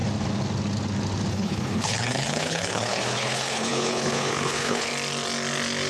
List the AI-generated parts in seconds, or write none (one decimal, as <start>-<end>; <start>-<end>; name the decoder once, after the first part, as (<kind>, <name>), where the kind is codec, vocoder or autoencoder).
1.3-4.9 (codec, HILCodec)